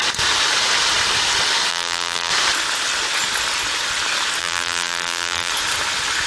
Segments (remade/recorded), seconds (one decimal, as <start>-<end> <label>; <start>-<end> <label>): 0.0-1.7 recorded; 1.7-2.3 remade; 2.3-4.4 recorded; 4.4-5.5 remade; 5.5-6.3 recorded